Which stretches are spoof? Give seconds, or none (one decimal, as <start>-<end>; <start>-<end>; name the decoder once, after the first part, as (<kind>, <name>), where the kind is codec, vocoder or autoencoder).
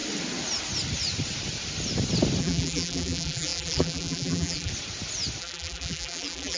2.4-4.7 (vocoder, BigVGAN v2); 5.4-6.6